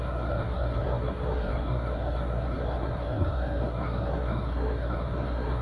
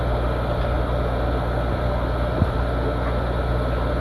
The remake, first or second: first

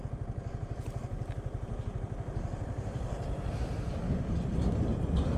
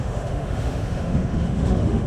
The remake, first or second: second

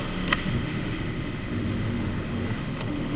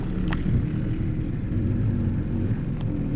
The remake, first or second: first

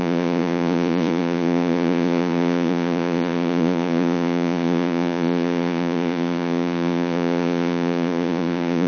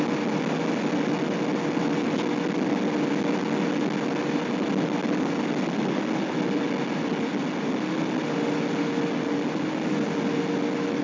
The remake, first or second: first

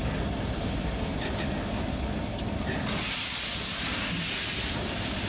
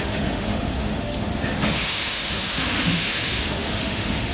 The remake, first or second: second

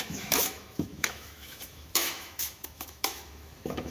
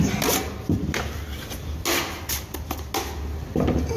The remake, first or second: first